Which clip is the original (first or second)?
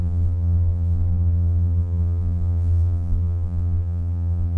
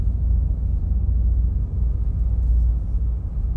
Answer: second